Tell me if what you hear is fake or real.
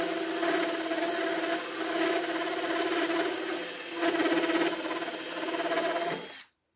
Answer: real